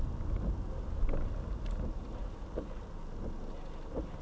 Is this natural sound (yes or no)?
yes